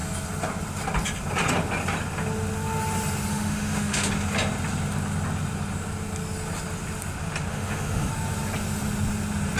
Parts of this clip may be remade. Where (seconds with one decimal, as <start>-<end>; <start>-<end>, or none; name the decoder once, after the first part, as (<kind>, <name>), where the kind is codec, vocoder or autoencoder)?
3.3-4.1 (autoencoder, DAC-VAE); 7.5-8.1